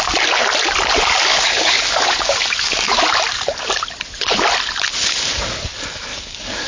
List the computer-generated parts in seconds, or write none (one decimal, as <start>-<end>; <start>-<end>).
1.3-3.0; 6.1-6.7

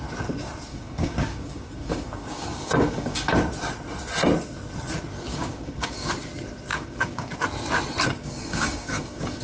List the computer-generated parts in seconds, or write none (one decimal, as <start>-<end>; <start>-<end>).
0.7-3.3; 5.3-6.1; 6.7-7.3; 8.2-9.4

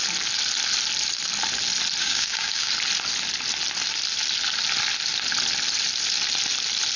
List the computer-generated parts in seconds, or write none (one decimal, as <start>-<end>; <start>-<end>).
2.0-2.7

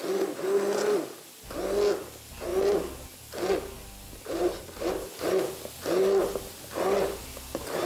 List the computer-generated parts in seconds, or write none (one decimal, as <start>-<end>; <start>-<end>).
none

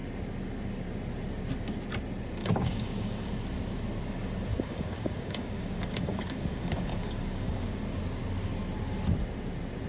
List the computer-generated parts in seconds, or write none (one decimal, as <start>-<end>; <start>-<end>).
2.4-3.3; 4.5-7.8

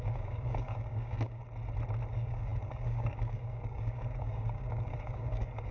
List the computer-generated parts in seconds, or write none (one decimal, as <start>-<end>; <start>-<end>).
0.0-1.4; 2.1-5.7